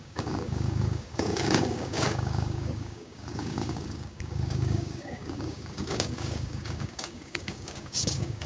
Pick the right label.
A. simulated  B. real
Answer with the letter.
A